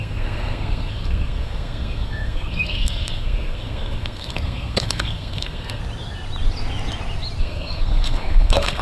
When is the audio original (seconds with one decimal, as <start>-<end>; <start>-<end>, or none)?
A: 5.8-7.4